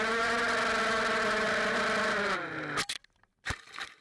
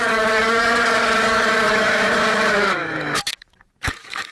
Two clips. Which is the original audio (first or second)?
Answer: first